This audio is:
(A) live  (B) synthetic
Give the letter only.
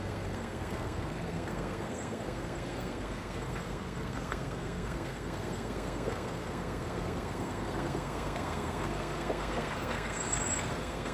B